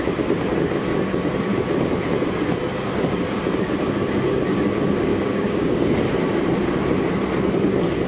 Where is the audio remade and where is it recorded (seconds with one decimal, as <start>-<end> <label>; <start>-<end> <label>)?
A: 0.0-5.1 recorded; 5.1-6.0 remade; 6.0-8.1 recorded